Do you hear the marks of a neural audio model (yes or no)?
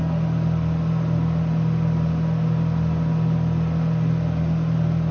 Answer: no